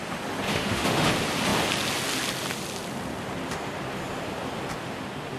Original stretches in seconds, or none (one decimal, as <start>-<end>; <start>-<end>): 0.0-0.5; 1.1-5.4